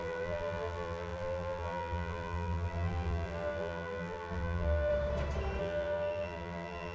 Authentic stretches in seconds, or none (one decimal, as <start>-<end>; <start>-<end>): 4.9-5.6